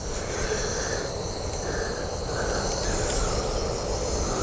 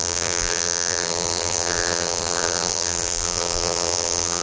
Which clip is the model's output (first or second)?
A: second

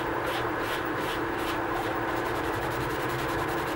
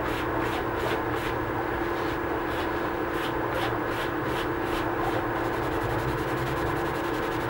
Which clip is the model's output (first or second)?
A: first